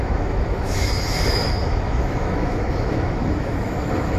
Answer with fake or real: fake